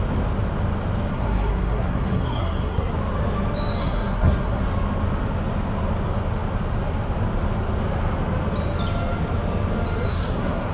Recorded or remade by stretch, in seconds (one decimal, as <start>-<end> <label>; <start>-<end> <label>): 0.0-1.1 recorded; 1.1-2.9 remade; 2.9-3.8 recorded; 3.8-4.6 remade; 4.6-10.1 recorded; 10.1-10.7 remade